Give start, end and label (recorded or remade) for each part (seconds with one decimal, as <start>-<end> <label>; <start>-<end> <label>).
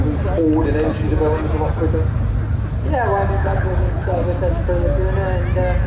0.0-3.4 recorded; 3.4-4.2 remade; 4.2-5.9 recorded